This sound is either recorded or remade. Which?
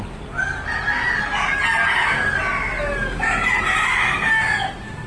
recorded